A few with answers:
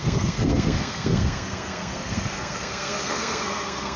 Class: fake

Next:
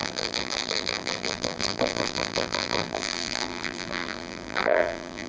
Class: fake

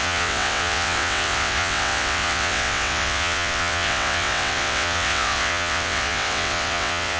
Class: fake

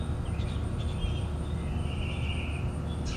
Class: real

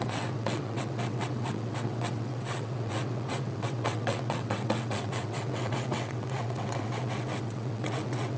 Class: fake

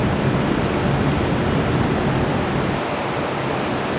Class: real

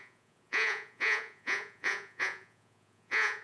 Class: fake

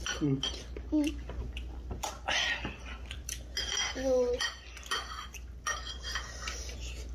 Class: real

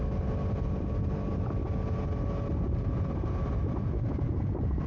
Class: real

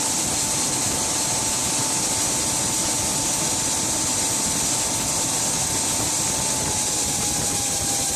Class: real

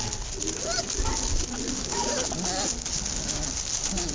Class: real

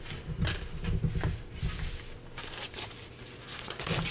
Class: real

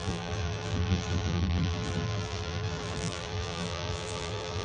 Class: fake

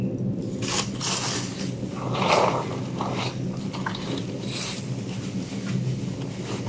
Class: real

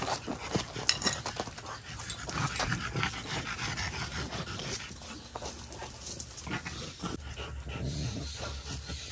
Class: real